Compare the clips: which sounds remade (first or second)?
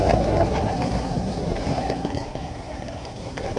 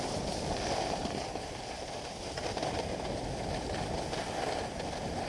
first